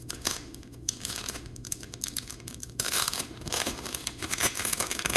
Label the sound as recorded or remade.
remade